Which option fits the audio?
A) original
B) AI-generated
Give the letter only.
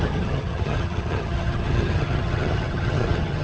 B